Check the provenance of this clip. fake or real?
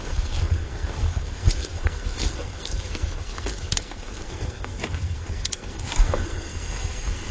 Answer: fake